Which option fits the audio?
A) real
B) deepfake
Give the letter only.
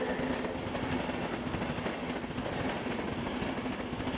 A